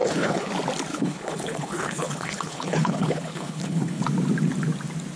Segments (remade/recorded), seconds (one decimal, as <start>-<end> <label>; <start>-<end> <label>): 0.0-0.5 remade; 0.5-0.9 recorded; 0.9-4.0 remade; 4.0-5.2 recorded